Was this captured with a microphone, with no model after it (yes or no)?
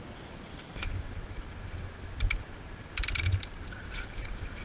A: yes